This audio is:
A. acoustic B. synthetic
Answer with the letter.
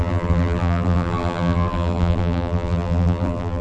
B